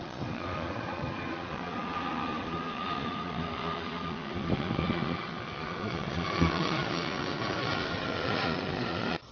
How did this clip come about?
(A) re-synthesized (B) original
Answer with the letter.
A